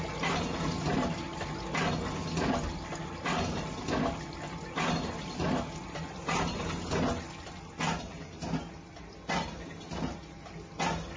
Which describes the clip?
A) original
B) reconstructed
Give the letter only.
A